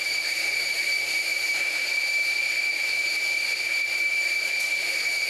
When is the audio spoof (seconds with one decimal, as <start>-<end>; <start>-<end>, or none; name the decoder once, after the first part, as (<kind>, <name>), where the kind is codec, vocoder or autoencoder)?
0.0-5.3 (vocoder, BigVGAN v2)